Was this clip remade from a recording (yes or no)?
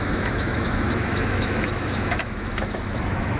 yes